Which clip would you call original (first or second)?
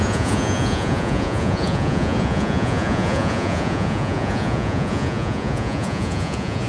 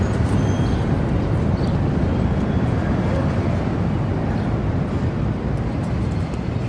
second